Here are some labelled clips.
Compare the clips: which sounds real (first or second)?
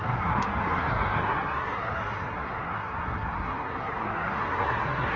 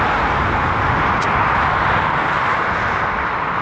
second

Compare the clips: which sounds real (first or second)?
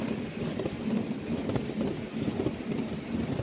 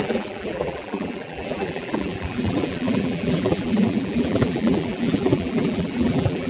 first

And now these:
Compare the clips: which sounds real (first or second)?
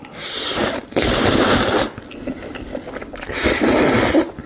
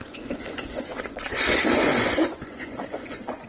first